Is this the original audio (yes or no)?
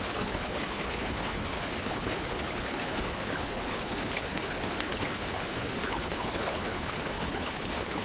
no